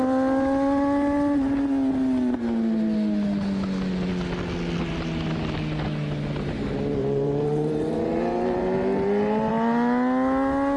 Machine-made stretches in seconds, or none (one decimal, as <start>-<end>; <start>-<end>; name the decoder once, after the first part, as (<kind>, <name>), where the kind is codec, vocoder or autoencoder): 7.0-9.5 (vocoder, BigVGAN v2)